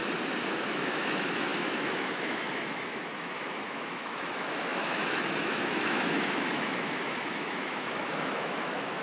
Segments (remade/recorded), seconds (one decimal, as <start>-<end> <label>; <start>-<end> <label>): 0.0-0.7 recorded; 0.7-9.0 remade